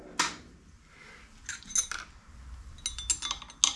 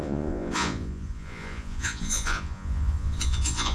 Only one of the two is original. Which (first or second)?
first